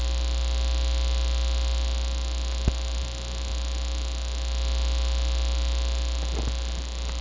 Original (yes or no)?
yes